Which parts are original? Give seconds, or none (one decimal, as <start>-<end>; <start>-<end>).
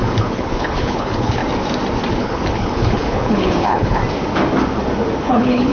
1.4-2.1; 4.0-5.2